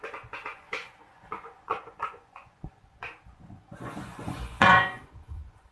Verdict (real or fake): fake